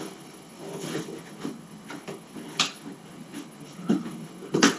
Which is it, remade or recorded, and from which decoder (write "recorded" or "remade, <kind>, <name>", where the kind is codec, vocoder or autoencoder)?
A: remade, codec, HILCodec